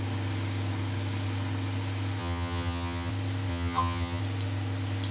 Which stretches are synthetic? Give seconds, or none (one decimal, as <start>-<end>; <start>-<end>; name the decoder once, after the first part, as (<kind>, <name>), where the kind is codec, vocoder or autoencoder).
2.2-3.1 (vocoder, HiFi-GAN); 3.5-4.2